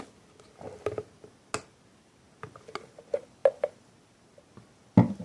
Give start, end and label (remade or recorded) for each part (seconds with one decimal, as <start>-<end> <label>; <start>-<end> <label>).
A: 0.0-5.2 recorded